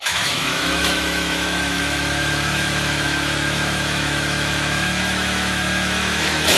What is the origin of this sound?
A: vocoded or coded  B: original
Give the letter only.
A